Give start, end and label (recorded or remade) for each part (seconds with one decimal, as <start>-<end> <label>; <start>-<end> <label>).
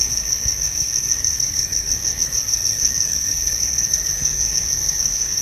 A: 0.0-5.4 remade